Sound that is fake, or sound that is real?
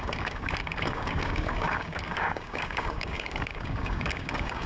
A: fake